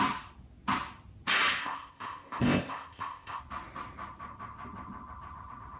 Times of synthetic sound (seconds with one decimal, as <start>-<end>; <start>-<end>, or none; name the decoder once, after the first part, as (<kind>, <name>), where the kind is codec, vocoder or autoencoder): 1.6-3.4 (codec, ZipCodec)